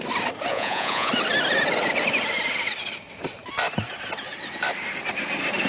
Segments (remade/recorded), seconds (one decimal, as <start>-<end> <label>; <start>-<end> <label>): 0.0-0.5 recorded; 0.5-1.1 remade; 1.1-5.7 recorded